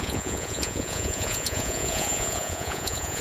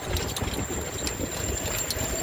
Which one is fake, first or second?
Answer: first